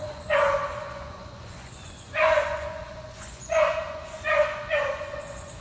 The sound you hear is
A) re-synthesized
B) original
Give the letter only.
A